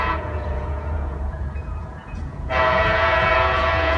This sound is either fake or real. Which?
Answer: fake